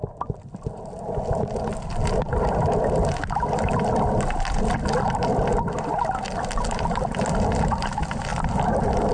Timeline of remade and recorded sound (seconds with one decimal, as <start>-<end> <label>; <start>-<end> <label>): 0.0-8.3 recorded; 8.3-9.1 remade